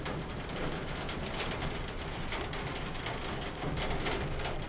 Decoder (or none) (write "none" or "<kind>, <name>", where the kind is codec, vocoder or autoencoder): none